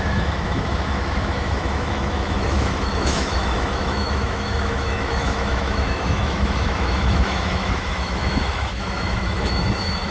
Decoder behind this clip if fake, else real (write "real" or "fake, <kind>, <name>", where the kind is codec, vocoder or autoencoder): fake, autoencoder, DAC-VAE